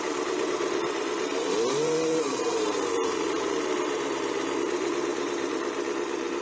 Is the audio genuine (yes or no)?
no